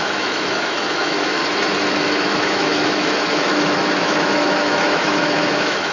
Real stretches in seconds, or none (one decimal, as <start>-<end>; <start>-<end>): 1.4-1.9

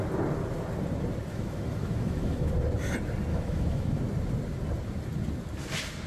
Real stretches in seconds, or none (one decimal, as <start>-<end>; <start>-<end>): 0.0-1.3; 2.5-3.3; 4.0-6.1